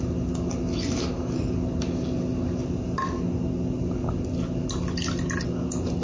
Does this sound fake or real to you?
real